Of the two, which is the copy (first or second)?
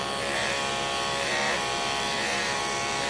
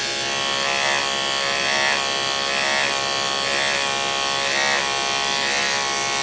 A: first